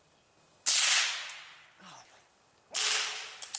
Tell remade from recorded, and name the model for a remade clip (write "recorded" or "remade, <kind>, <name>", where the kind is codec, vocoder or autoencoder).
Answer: recorded